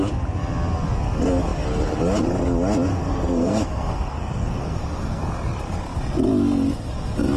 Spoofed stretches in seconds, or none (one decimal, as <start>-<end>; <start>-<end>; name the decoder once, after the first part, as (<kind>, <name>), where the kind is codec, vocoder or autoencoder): 2.9-5.2 (codec, SNAC)